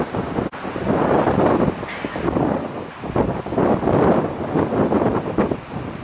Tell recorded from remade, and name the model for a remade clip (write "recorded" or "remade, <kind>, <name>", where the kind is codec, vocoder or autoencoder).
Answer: recorded